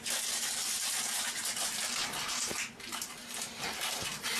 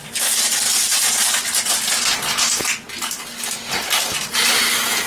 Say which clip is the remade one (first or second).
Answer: first